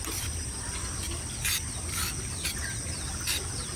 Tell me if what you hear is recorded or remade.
remade